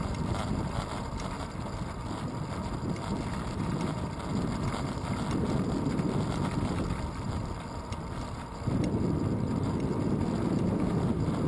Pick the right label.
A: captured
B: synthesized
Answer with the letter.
A